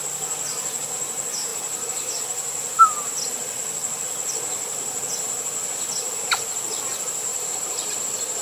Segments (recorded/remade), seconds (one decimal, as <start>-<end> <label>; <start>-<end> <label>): 0.0-1.5 recorded; 1.5-2.2 remade; 2.2-2.7 recorded; 2.7-3.4 remade; 3.4-7.3 recorded; 7.3-8.4 remade